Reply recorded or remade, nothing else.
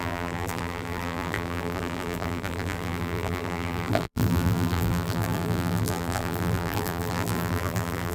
remade